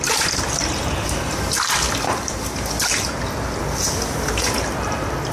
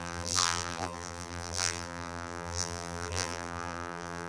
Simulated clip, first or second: second